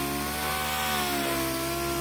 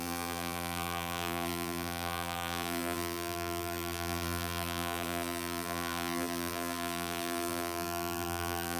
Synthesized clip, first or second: second